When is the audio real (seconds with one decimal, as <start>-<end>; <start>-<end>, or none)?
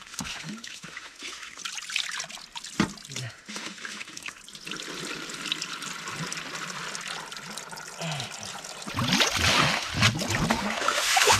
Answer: 1.6-3.2; 4.4-9.5; 9.9-10.5